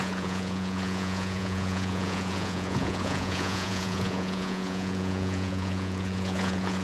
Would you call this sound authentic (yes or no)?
no